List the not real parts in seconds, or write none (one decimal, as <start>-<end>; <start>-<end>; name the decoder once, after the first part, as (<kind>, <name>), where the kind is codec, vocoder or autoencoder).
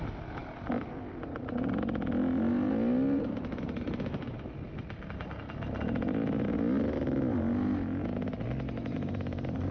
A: none